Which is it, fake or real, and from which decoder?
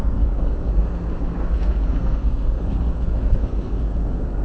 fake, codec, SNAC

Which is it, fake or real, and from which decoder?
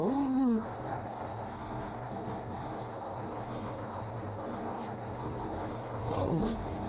fake, codec, SNAC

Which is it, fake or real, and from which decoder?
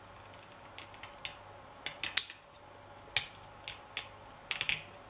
real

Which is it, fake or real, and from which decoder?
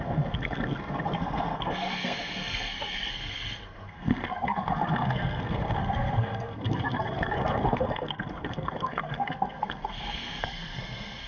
fake, codec, SNAC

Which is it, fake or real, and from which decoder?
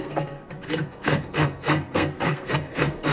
fake, codec, SNAC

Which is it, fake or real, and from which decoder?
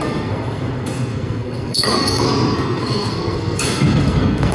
fake, codec, SNAC